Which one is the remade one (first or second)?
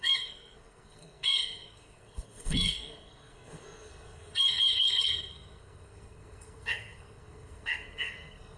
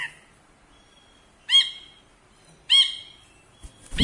first